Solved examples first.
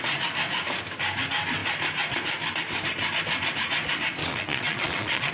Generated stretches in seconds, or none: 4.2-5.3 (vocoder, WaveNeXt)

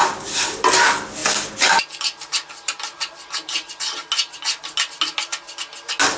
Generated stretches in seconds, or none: none

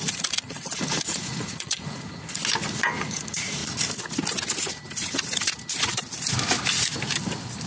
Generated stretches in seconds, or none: 0.0-2.4 (vocoder, Vocos); 3.0-3.6

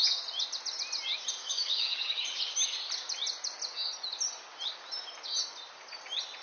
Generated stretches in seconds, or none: 1.4-2.4 (codec, DAC)

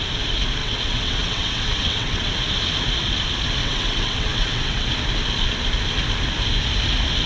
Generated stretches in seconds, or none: 0.6-2.3 (vocoder, WaveNeXt); 3.6-4.9

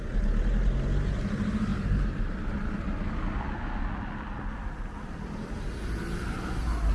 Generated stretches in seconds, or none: none